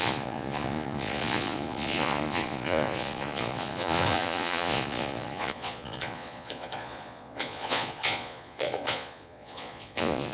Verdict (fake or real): fake